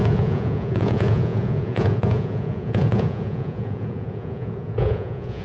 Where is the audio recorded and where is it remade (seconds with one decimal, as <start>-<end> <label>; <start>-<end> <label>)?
0.0-5.4 remade